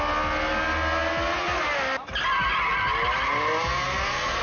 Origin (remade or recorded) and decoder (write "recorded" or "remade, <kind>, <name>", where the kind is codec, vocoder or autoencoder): recorded